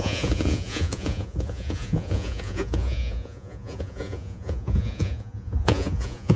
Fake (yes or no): yes